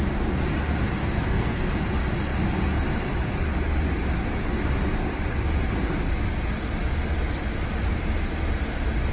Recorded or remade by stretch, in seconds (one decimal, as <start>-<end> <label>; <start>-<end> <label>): 0.0-1.0 recorded; 1.0-1.6 remade; 1.6-9.1 recorded